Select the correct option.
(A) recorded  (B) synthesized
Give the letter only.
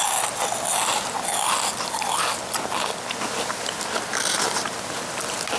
A